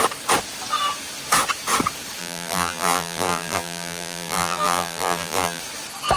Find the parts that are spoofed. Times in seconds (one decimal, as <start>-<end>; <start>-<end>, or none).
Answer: 2.2-5.6